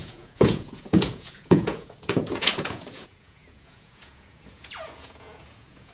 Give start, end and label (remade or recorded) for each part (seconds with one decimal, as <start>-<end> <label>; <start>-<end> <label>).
0.0-5.9 remade